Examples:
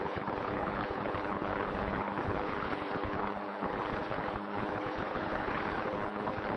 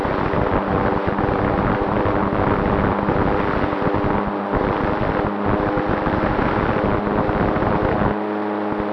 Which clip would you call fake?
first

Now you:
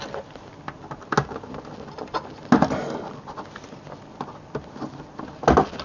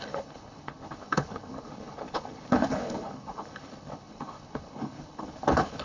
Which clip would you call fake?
second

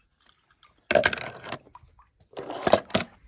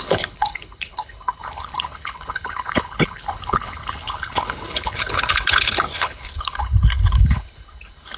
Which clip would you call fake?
second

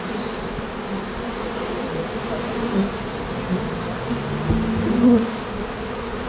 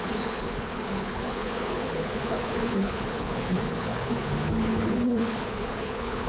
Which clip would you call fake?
second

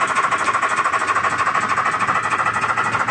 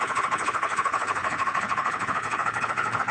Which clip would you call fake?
second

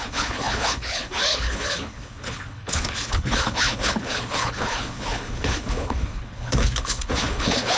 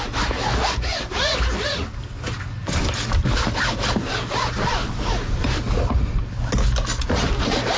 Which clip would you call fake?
first